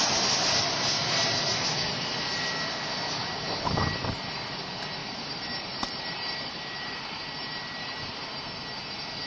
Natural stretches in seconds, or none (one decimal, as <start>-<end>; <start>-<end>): 0.0-3.2; 4.1-5.0; 8.2-9.3